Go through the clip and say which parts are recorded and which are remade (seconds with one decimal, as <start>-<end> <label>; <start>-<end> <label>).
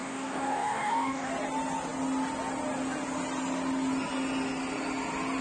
0.0-1.3 remade; 1.3-5.4 recorded